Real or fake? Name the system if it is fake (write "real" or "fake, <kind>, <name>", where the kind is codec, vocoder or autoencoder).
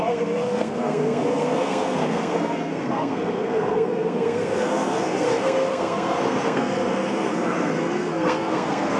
fake, codec, SNAC